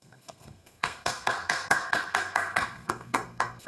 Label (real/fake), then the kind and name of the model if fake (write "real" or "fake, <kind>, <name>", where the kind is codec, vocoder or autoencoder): fake, codec, SNAC